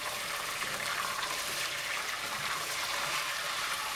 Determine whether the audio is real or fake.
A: fake